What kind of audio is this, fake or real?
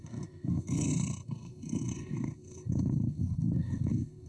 fake